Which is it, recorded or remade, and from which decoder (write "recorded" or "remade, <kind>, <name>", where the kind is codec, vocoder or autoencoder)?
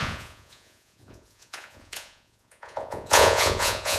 remade, vocoder, Vocos